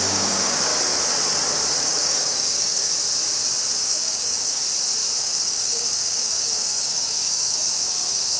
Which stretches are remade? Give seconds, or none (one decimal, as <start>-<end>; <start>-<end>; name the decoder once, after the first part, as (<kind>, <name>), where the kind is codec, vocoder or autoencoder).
0.0-0.7 (codec, DAC); 1.8-2.9; 3.8-4.6; 5.2-8.4

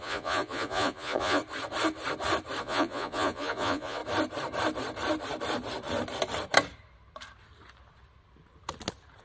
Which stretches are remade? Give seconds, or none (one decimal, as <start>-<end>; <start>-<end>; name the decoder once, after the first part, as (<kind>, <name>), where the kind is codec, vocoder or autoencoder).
0.0-1.4 (vocoder, Vocos); 2.6-4.0